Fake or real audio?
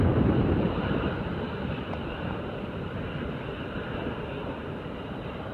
real